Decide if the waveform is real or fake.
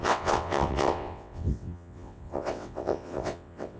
fake